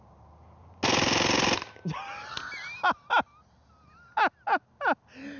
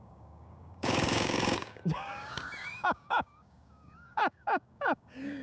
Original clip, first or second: first